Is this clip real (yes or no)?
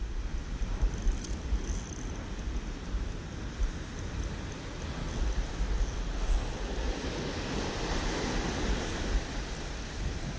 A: yes